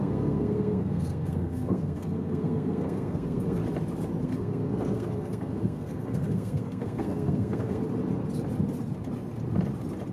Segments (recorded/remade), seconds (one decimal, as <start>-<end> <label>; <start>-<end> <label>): 0.0-3.6 remade; 3.6-4.2 recorded; 4.2-7.8 remade; 7.8-10.1 recorded